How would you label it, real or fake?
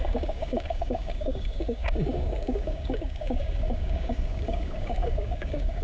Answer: fake